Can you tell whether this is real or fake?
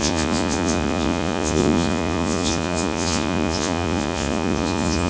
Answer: fake